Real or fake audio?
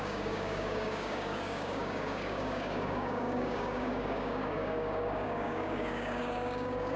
fake